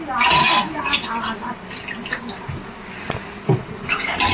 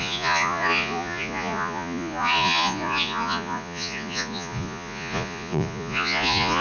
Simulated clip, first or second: second